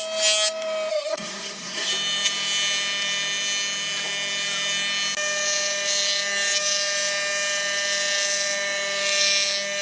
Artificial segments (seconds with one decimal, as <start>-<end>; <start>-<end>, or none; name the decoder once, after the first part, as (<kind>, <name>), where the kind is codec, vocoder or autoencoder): 0.9-1.9 (codec, SNAC)